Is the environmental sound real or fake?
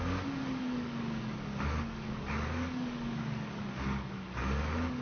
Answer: fake